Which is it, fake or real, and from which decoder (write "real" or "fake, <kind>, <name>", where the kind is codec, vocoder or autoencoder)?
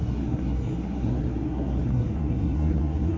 fake, codec, SNAC